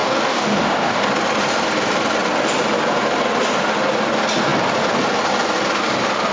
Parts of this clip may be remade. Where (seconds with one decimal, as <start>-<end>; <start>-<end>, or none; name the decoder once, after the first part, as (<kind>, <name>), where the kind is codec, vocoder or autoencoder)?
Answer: 0.0-1.1 (codec, DAC)